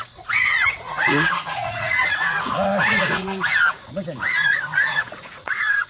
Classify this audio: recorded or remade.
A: remade